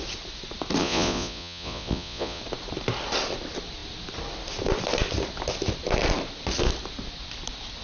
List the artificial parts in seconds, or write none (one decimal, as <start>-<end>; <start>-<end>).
0.8-2.4